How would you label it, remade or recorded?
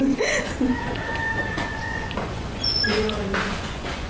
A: remade